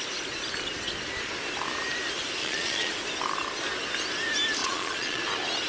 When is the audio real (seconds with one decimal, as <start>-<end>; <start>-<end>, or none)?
0.0-2.4; 2.9-4.6; 5.2-5.7